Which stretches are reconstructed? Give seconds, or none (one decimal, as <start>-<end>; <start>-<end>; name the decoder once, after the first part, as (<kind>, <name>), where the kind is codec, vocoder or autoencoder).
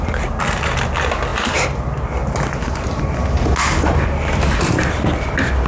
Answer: none